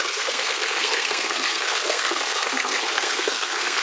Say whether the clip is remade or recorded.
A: remade